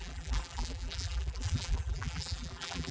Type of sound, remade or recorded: remade